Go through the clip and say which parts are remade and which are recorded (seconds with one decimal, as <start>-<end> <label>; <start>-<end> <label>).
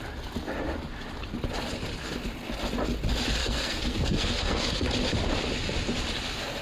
0.0-3.4 recorded; 3.4-4.9 remade; 4.9-6.6 recorded